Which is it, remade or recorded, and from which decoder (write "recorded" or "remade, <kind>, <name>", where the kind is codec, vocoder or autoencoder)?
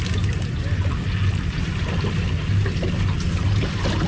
recorded